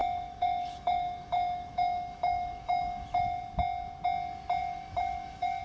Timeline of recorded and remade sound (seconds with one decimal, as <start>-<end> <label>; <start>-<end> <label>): 0.0-3.4 remade; 3.4-4.6 recorded; 4.6-5.6 remade